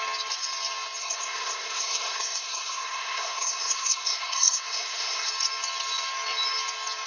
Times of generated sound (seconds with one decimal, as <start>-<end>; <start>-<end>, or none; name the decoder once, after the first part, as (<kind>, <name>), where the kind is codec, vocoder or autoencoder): 1.0-5.3 (codec, SNAC)